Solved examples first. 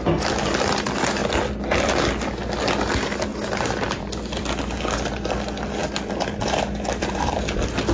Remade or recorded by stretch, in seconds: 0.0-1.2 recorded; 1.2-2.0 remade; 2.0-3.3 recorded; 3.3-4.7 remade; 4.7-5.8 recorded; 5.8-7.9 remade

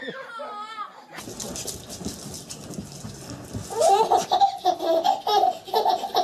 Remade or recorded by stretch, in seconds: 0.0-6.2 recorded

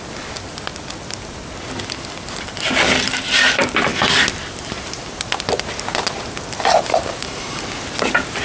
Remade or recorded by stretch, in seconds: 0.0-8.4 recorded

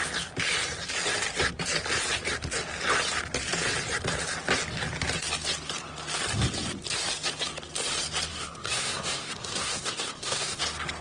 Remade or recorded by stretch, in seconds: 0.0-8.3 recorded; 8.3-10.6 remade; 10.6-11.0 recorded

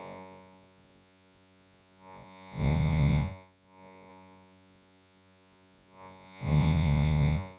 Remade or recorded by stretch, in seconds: 0.0-7.6 remade

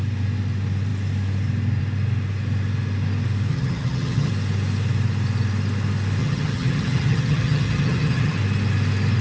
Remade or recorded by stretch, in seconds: 0.0-3.5 recorded; 3.5-4.3 remade; 4.3-6.2 recorded; 6.2-8.4 remade; 8.4-9.2 recorded

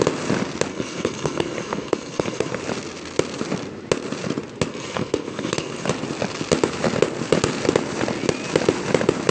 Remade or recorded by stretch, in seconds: 0.0-0.7 recorded; 0.7-2.6 remade; 2.6-4.7 recorded; 4.7-5.9 remade; 5.9-9.3 recorded

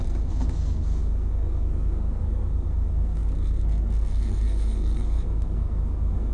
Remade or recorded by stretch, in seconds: 0.0-6.3 remade